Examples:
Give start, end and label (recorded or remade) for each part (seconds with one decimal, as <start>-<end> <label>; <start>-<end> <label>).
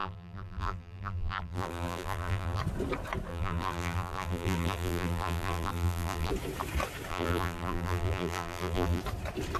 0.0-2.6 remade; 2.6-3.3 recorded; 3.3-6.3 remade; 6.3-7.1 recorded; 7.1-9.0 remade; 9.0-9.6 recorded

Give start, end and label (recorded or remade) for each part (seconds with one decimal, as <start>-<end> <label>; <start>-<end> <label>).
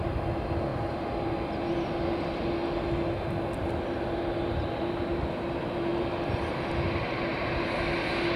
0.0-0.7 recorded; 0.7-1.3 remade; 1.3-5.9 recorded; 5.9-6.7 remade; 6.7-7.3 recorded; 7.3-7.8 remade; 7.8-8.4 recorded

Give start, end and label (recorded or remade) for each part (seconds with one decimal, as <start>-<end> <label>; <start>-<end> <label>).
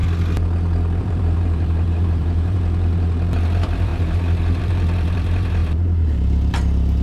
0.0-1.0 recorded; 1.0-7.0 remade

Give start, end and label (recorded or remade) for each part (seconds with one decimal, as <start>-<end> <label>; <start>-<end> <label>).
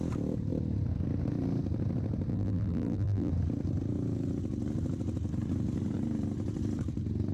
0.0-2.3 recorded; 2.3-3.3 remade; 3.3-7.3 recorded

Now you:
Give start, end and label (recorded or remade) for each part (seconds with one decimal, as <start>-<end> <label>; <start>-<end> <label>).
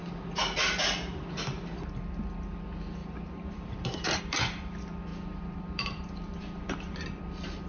0.0-3.0 recorded; 3.0-4.2 remade; 4.2-5.1 recorded; 5.1-7.2 remade; 7.2-7.7 recorded